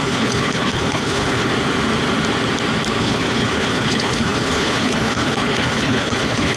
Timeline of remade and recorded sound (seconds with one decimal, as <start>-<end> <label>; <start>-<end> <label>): 0.0-1.5 remade; 1.5-3.0 recorded; 3.0-6.6 remade